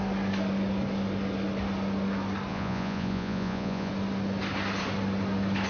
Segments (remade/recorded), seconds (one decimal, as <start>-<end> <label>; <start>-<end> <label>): 0.0-2.5 recorded; 2.5-3.9 remade; 3.9-5.7 recorded